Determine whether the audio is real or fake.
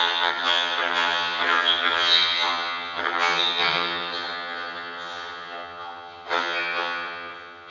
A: fake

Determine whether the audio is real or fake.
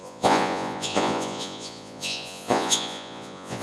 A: fake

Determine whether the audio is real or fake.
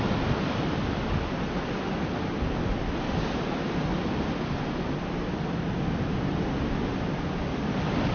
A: real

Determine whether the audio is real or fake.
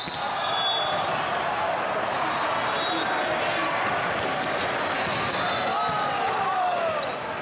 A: real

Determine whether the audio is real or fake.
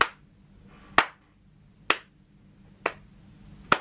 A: real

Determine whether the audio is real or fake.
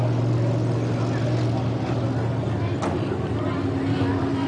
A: real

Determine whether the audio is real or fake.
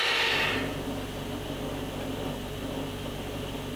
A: real